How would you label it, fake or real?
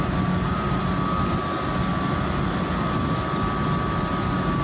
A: real